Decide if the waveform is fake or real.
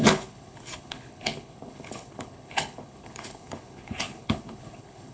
fake